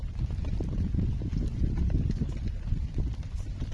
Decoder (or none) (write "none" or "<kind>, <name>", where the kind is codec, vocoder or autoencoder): none